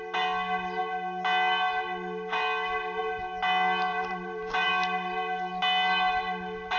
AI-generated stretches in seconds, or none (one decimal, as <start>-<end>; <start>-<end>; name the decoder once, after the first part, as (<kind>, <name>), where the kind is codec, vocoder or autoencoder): 3.9-4.7 (vocoder, BigVGAN v2)